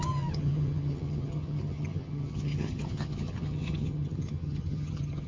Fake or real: fake